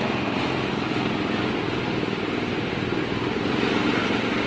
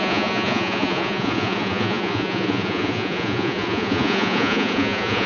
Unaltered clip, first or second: first